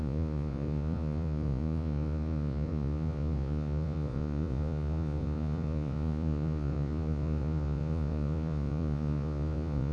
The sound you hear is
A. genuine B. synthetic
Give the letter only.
B